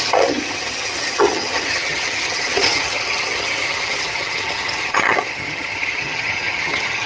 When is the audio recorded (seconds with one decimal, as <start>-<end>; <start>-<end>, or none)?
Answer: none